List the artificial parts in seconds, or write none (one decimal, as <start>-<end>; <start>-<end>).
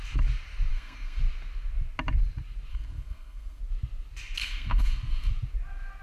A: 0.7-1.2; 2.7-3.6; 4.4-5.3